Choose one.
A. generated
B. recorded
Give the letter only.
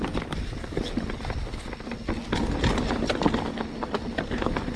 B